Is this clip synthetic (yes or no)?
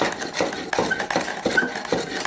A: no